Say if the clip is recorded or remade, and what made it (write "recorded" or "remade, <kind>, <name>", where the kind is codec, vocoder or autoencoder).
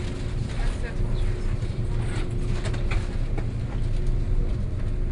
recorded